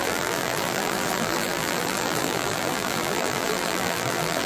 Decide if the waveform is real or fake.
fake